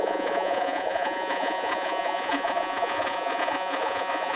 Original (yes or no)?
no